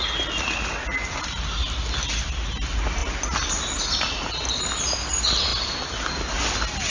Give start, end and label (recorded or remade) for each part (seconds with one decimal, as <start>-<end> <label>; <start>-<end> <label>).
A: 0.0-6.9 recorded